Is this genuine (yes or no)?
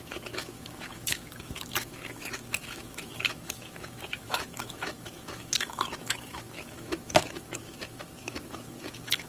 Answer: no